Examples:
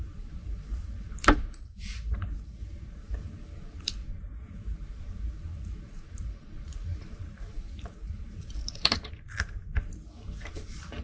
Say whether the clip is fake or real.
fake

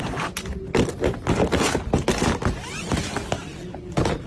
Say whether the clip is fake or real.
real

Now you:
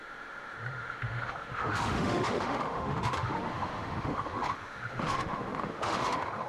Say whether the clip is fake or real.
fake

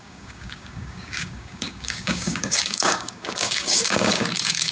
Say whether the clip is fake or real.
fake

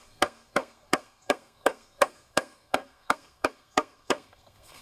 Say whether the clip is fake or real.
fake